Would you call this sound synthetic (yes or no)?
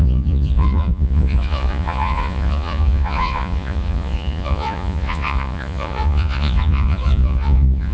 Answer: yes